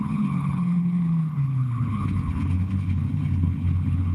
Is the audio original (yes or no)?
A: no